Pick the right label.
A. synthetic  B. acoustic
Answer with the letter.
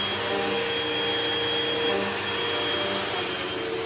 B